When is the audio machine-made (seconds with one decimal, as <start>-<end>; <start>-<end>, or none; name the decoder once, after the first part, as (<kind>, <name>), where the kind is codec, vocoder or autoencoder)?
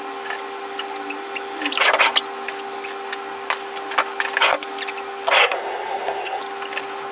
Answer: 5.4-6.4 (codec, SNAC)